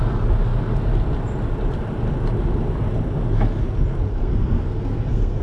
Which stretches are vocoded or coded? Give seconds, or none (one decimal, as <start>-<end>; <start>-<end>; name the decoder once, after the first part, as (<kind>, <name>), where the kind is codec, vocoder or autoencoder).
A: 4.1-5.4 (codec, SNAC)